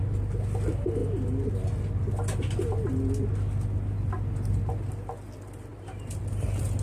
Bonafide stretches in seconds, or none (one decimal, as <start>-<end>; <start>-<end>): 0.0-6.8